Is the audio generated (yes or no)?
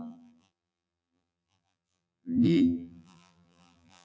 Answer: yes